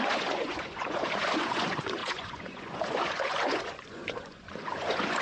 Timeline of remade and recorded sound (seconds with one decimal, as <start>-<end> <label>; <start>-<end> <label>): 0.0-5.2 remade

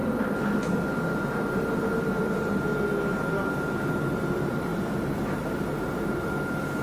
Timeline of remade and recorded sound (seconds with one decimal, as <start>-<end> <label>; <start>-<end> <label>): 0.0-1.5 recorded; 1.5-4.7 remade; 4.7-5.4 recorded; 5.4-6.8 remade

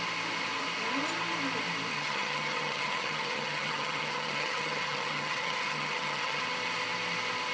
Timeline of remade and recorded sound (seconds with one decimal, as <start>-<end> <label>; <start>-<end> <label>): 0.0-1.9 recorded; 1.9-6.4 remade; 6.4-7.5 recorded

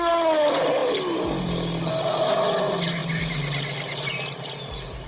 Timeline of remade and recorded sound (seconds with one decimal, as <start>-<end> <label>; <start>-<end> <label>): 0.0-5.1 recorded

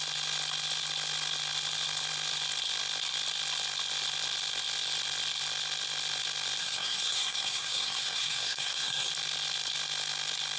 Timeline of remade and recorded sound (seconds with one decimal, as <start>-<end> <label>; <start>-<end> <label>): 0.0-6.6 recorded; 6.6-9.1 remade; 9.1-10.6 recorded